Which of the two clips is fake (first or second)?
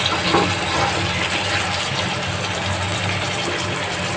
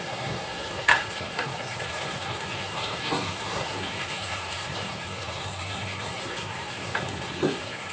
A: second